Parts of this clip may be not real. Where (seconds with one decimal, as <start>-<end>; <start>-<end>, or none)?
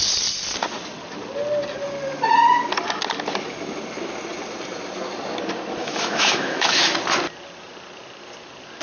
5.8-6.9